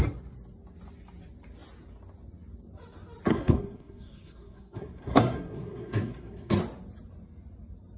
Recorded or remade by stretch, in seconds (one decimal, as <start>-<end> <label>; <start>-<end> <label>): 0.0-3.3 recorded; 3.3-6.6 remade; 6.6-8.0 recorded